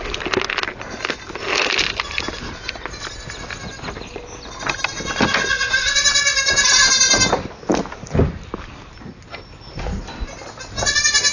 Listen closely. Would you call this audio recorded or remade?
recorded